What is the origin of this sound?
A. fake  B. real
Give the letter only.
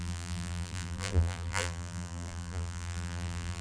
A